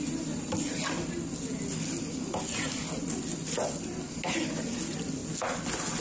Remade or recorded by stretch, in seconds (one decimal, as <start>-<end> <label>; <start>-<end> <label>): 0.0-6.0 recorded